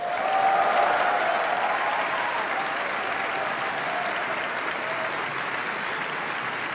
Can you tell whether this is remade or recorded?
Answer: recorded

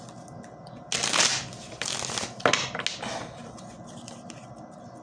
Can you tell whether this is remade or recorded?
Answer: recorded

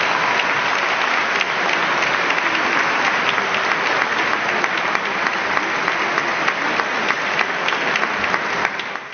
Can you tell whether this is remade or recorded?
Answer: recorded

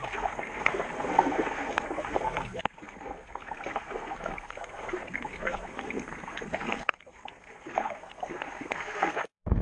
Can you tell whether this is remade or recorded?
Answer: remade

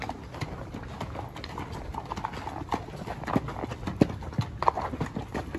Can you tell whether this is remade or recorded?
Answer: recorded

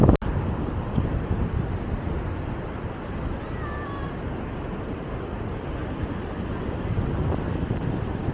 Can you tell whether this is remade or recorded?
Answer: recorded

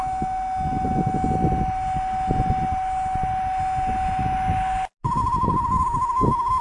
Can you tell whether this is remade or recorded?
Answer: recorded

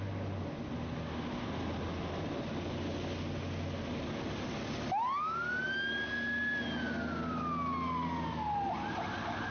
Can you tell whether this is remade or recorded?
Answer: recorded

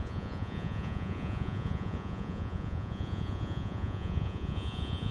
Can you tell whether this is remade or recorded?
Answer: remade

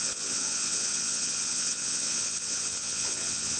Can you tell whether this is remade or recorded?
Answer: remade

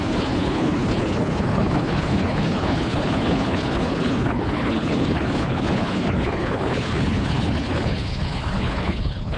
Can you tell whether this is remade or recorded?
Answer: remade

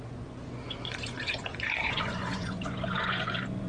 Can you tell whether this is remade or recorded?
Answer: remade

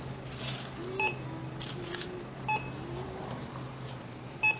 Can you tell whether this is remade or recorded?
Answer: recorded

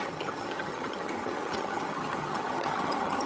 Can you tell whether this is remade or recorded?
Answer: remade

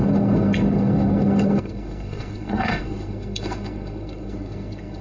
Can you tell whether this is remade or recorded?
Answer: remade